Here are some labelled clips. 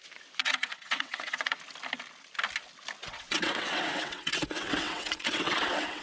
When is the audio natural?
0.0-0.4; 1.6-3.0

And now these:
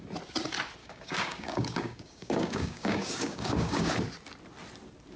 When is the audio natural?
0.0-0.8; 3.9-5.2

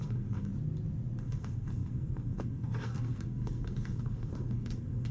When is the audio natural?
0.5-1.2

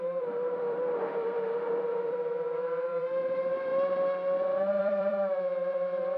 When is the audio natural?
3.7-4.8